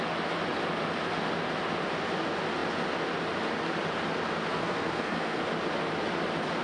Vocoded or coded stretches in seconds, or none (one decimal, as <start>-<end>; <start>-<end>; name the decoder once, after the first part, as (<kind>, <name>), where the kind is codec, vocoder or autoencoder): 4.5-5.4 (codec, SNAC)